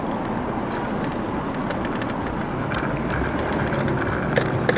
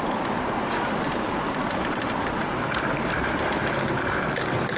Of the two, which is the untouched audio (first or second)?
first